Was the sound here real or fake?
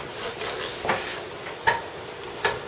real